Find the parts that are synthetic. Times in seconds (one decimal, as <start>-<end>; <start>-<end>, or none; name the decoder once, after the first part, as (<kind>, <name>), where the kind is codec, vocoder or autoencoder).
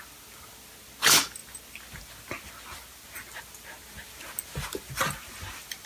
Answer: none